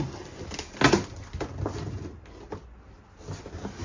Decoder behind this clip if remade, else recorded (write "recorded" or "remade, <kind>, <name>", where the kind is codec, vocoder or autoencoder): recorded